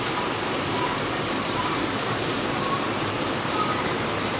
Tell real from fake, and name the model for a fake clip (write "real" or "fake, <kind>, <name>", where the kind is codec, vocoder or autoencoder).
fake, vocoder, BigVGAN v2